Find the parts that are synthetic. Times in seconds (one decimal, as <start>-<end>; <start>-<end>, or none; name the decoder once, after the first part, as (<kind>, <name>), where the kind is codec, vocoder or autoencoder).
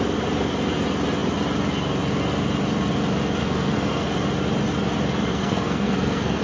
3.4-4.1 (codec, SNAC); 5.3-6.4